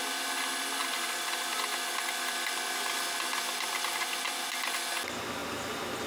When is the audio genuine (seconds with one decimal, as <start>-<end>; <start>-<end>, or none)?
0.0-0.8; 2.1-5.4